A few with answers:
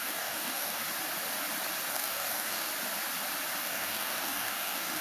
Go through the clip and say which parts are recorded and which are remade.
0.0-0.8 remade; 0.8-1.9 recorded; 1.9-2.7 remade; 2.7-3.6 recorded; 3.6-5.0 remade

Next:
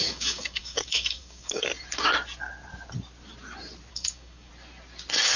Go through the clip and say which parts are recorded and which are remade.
0.0-1.7 remade; 1.7-3.9 recorded; 3.9-4.5 remade; 4.5-5.4 recorded

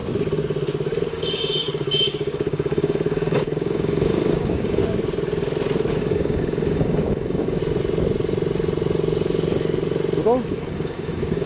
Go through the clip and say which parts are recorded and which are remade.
0.0-1.1 recorded; 1.1-4.8 remade; 4.8-5.9 recorded; 5.9-7.6 remade; 7.6-10.7 recorded; 10.7-11.5 remade

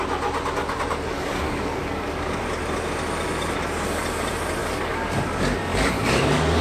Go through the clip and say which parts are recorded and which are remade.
0.0-0.6 recorded; 0.6-2.4 remade; 2.4-4.6 recorded; 4.6-5.2 remade; 5.2-5.7 recorded; 5.7-6.6 remade